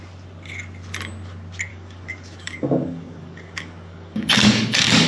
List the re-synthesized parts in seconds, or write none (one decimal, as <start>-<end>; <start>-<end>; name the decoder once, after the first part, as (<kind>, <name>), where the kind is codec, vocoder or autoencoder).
1.7-5.1 (codec, DAC)